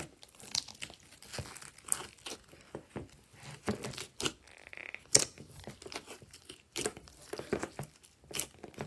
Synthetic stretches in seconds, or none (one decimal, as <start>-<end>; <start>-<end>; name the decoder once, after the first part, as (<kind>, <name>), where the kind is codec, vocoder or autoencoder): none